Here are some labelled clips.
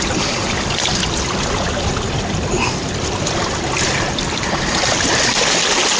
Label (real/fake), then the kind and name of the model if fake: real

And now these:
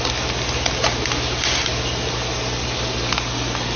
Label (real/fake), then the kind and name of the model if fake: real